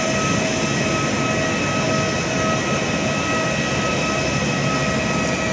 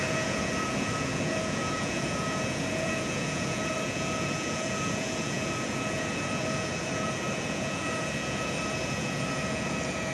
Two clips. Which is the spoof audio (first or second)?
second